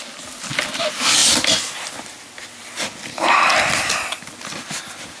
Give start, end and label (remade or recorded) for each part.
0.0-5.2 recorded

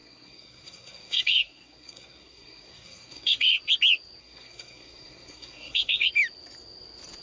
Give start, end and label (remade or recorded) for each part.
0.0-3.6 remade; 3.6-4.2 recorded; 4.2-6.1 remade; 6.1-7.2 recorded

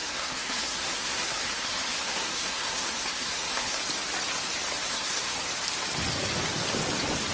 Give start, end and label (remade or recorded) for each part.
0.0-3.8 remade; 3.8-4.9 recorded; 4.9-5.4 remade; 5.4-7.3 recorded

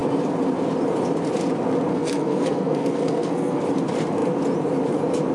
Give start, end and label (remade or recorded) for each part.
0.0-1.9 recorded; 1.9-3.6 remade; 3.6-5.3 recorded

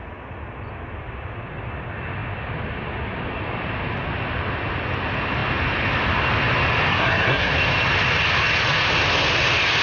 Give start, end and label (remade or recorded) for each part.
0.0-6.9 recorded; 6.9-7.5 remade; 7.5-9.8 recorded